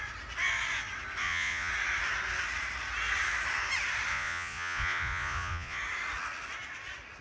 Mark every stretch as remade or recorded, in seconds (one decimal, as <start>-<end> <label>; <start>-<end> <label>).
0.0-1.2 recorded; 1.2-1.7 remade; 1.7-4.1 recorded; 4.1-5.8 remade; 5.8-7.2 recorded